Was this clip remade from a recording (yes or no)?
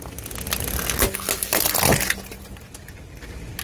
no